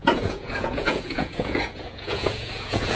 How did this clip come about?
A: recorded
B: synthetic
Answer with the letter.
B